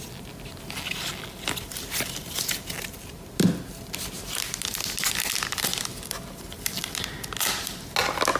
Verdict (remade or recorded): recorded